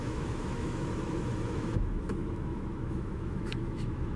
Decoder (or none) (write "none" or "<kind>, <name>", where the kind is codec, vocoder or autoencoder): autoencoder, DAC-VAE